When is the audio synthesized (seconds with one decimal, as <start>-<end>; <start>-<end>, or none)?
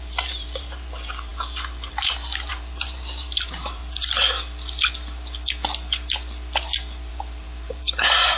0.0-3.8; 7.1-8.4